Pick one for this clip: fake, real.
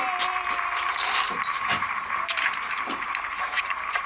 fake